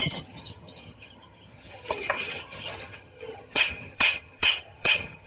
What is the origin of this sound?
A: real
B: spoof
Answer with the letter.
B